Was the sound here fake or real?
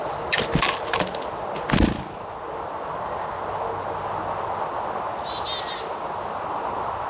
real